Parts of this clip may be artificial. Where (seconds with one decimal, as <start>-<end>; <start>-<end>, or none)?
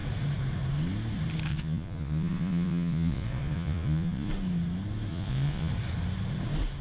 1.5-4.3; 5.1-5.7